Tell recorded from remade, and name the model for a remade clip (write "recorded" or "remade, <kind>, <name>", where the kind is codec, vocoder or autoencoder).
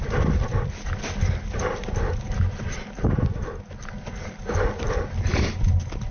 recorded